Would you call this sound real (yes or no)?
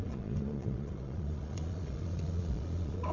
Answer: no